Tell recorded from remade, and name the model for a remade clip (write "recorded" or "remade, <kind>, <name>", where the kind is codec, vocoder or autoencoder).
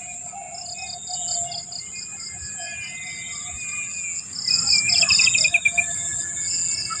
recorded